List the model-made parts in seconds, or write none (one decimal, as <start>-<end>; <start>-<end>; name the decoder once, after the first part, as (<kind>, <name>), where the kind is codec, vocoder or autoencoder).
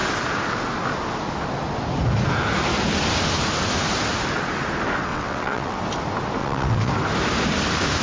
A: 5.1-5.8 (vocoder, WaveNeXt); 6.4-6.9